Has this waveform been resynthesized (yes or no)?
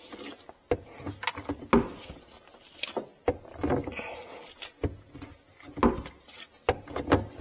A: no